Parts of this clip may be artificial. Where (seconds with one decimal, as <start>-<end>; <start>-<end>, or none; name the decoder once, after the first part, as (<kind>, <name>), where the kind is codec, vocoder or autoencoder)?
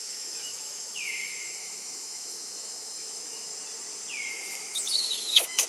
0.0-3.5 (autoencoder, DAC-VAE); 4.3-5.7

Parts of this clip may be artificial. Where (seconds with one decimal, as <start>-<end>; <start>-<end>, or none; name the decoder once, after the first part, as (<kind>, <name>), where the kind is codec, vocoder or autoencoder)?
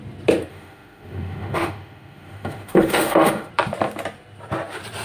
0.5-3.5 (autoencoder, DAC-VAE)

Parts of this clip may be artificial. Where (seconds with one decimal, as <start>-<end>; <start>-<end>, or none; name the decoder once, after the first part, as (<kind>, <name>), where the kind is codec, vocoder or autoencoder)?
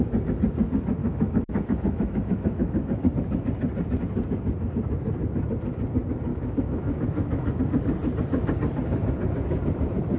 1.0-3.1 (autoencoder, DAC-VAE); 6.3-7.6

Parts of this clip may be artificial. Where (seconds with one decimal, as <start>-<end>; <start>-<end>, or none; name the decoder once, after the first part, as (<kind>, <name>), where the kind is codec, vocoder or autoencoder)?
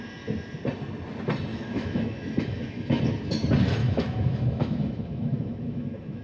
1.5-3.0 (autoencoder, DAC-VAE); 3.8-6.2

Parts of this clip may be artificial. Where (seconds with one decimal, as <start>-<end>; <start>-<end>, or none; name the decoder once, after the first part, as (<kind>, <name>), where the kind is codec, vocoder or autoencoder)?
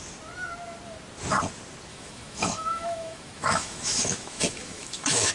1.9-5.3 (autoencoder, DAC-VAE)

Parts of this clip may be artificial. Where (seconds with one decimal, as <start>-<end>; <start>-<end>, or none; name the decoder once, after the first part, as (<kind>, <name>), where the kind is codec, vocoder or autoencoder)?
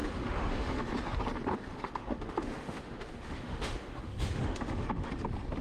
0.0-0.9 (autoencoder, DAC-VAE); 1.7-5.1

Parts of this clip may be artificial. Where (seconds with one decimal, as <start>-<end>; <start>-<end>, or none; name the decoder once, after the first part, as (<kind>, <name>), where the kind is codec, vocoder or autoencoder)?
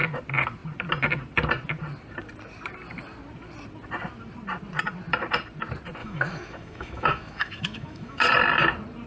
6.0-8.2 (autoencoder, DAC-VAE)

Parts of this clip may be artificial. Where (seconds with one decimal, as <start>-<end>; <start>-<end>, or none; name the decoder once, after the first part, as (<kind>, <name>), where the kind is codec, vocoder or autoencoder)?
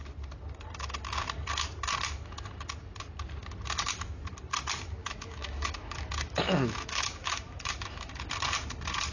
5.0-8.1 (autoencoder, DAC-VAE)